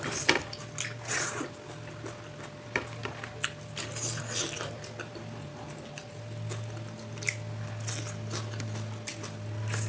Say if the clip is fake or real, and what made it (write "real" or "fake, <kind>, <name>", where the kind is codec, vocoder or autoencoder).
real